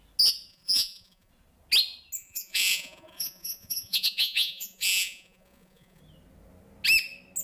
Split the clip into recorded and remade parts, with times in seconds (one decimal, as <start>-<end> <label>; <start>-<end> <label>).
0.0-0.5 recorded; 0.5-1.3 remade; 1.3-2.2 recorded; 2.2-6.0 remade; 6.0-7.4 recorded